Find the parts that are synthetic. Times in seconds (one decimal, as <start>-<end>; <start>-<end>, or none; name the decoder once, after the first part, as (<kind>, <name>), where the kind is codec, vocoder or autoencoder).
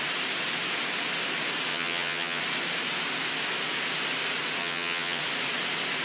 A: 1.7-2.4 (vocoder, HiFi-GAN); 4.6-5.2